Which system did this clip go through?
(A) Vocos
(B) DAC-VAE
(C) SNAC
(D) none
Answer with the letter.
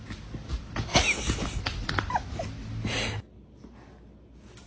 D